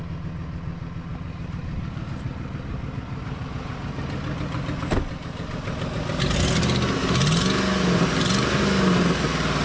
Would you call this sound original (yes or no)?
yes